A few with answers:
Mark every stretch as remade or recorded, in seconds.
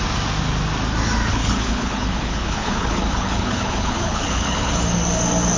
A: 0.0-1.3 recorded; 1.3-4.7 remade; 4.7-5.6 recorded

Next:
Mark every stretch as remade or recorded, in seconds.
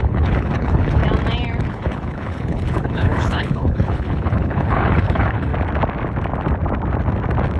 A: 0.0-1.0 remade; 1.0-1.7 recorded; 1.7-5.5 remade; 5.5-7.6 recorded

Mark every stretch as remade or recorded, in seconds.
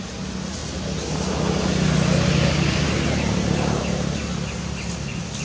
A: 0.0-5.4 recorded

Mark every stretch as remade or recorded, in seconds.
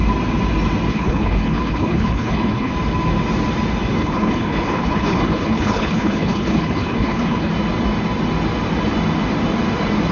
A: 0.0-0.9 recorded; 0.9-2.7 remade; 2.7-4.0 recorded; 4.0-7.5 remade; 7.5-10.1 recorded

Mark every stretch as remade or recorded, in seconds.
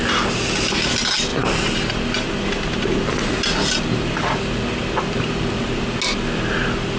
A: 0.0-7.0 recorded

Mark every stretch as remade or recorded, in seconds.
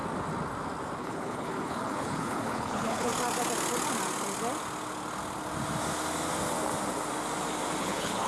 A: 0.0-1.0 recorded; 1.0-3.1 remade; 3.1-7.8 recorded; 7.8-8.3 remade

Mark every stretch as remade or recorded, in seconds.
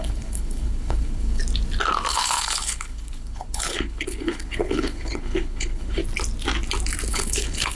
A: 0.0-1.4 remade; 1.4-2.1 recorded; 2.1-6.0 remade; 6.0-7.1 recorded; 7.1-7.7 remade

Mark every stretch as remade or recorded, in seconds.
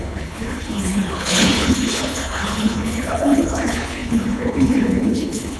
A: 0.0-5.6 remade